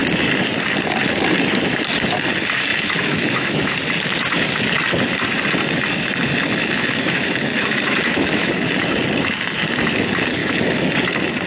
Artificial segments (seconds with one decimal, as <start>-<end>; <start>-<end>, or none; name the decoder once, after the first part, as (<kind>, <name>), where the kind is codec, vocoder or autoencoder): 2.7-3.7 (autoencoder, DAC-VAE); 6.6-8.5; 10.4-10.9